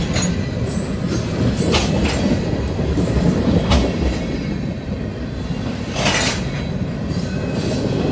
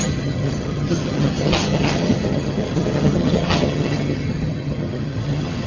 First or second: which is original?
first